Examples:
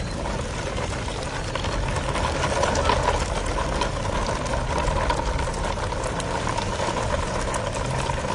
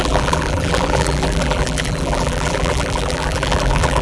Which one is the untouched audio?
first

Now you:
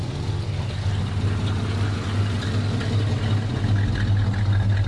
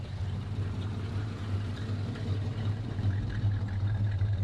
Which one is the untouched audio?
first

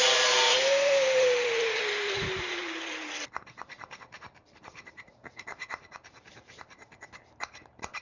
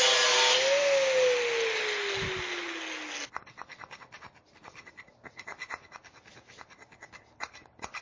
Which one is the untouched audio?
second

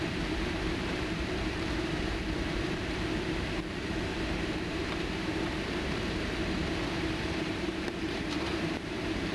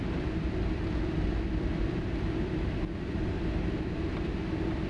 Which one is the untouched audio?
second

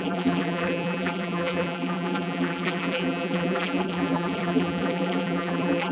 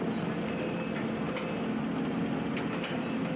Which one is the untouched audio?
second